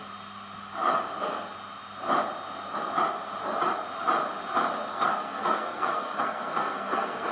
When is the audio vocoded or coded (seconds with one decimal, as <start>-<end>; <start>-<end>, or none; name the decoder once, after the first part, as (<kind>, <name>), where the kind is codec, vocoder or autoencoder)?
4.9-7.3 (codec, SNAC)

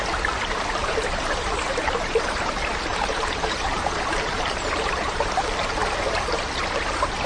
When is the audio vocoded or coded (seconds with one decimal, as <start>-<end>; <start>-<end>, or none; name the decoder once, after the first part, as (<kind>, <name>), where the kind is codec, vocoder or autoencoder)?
0.8-2.5 (vocoder, BigVGAN v2); 2.9-5.3